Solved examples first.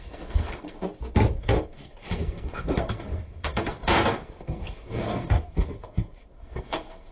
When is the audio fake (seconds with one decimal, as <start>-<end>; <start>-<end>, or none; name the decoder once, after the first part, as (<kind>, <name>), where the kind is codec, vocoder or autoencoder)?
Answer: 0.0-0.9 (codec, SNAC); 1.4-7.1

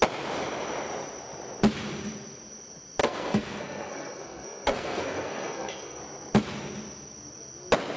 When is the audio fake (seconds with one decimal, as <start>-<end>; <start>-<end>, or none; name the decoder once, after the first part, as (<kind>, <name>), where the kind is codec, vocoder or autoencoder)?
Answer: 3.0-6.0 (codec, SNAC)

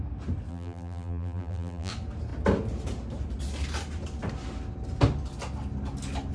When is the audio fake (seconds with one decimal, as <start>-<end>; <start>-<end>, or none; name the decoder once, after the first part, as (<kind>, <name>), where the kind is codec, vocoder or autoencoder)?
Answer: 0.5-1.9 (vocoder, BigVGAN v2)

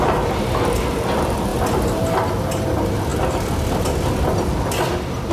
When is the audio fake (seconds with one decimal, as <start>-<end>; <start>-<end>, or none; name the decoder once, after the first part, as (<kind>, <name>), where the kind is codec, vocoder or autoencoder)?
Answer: none

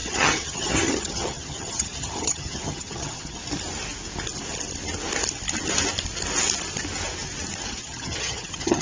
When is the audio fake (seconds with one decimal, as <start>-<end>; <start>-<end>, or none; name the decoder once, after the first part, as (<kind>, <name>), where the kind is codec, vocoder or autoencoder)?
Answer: 0.0-3.4 (vocoder, HiFi-GAN); 7.7-8.8

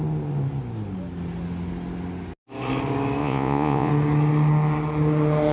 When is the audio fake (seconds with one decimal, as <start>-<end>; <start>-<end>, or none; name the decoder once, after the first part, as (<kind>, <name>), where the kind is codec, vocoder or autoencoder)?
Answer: 3.2-3.9 (vocoder, Vocos)

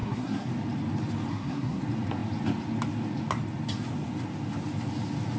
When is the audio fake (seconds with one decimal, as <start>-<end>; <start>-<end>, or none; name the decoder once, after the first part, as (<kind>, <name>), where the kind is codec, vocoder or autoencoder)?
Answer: 0.0-0.5 (codec, SNAC); 1.3-1.8